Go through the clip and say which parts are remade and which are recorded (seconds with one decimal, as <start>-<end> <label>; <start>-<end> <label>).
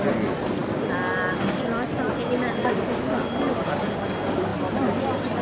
0.0-5.4 recorded